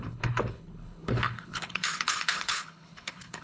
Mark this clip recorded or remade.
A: remade